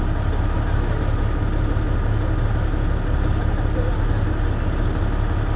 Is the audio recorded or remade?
recorded